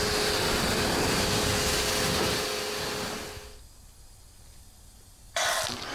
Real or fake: real